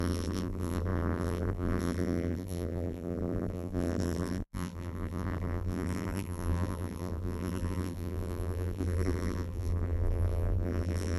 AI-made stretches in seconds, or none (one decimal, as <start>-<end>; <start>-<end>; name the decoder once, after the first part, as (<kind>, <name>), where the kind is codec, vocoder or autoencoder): 0.0-11.2 (vocoder, BigVGAN v2)